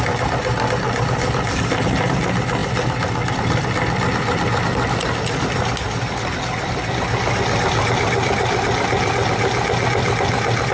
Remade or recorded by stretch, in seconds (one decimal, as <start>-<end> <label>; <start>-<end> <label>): 0.0-10.7 recorded